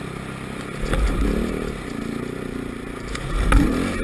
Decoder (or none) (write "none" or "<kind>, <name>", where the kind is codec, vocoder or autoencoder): none